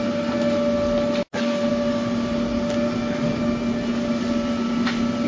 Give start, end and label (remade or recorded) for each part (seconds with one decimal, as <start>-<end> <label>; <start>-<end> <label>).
0.0-5.3 recorded